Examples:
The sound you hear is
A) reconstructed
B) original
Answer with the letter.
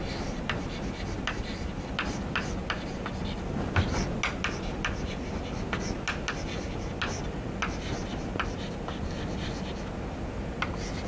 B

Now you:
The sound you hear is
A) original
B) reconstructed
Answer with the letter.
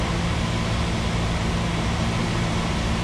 A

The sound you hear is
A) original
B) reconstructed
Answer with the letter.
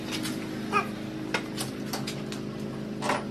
A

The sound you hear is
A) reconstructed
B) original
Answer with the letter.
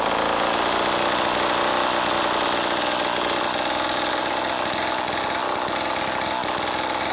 B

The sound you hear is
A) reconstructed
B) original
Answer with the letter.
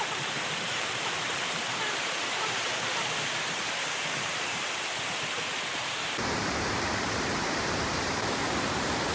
A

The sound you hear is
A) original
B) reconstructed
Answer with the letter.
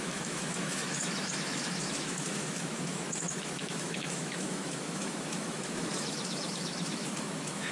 B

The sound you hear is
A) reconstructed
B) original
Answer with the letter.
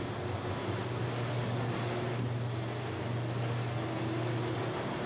B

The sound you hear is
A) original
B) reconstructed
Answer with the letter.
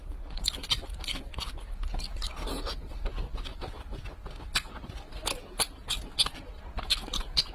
A